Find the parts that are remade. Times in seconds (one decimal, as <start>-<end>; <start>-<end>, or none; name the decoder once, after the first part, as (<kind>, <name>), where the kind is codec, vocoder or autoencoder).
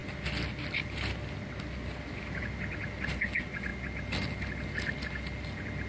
none